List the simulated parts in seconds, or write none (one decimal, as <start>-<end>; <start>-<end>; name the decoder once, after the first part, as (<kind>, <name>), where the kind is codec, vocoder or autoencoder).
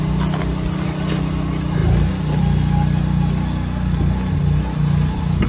none